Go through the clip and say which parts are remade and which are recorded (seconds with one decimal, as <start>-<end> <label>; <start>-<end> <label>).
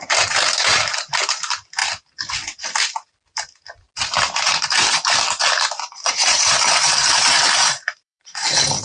0.0-1.8 remade; 1.8-4.0 recorded; 4.0-8.8 remade